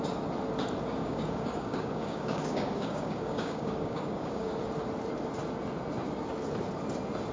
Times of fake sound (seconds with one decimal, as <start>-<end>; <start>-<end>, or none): 1.0-4.5